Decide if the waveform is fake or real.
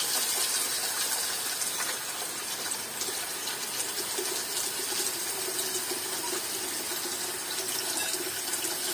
real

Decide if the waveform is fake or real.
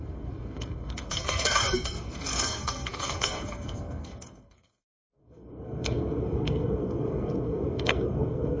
fake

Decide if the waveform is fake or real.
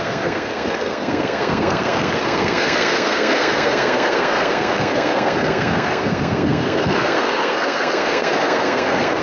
fake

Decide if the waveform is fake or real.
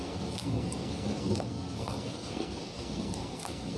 fake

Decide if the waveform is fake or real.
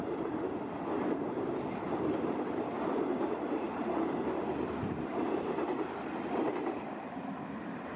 real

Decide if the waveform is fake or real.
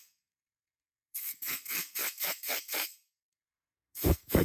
fake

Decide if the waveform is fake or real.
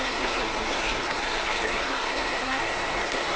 fake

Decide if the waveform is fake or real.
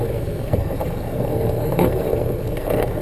fake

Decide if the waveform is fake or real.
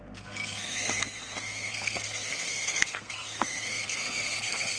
fake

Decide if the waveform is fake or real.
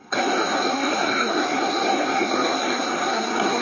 fake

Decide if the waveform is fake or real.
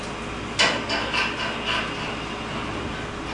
real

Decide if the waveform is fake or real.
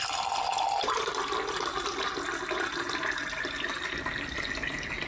real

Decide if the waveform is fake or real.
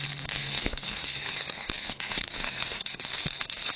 fake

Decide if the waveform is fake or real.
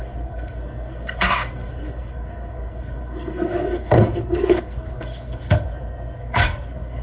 fake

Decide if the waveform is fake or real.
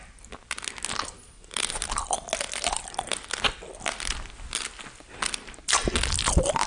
real